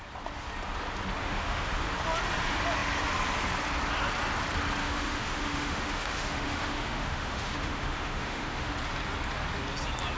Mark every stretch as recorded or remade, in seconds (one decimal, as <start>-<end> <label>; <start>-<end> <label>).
0.0-1.2 recorded; 1.2-1.7 remade; 1.7-4.8 recorded; 4.8-8.7 remade; 8.7-10.2 recorded